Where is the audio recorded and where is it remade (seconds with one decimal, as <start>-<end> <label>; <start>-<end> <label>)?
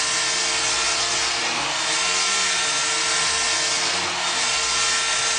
0.0-5.4 recorded